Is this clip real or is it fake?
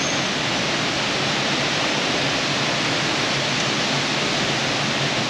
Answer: real